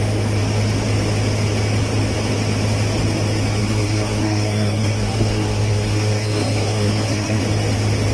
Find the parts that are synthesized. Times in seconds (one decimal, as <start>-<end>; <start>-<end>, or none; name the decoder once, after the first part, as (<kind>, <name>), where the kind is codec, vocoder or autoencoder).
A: 3.6-7.4 (codec, SNAC)